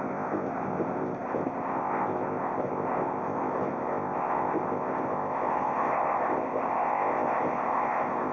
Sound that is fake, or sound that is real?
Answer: fake